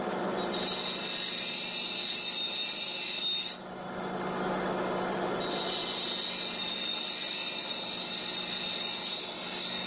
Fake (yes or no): no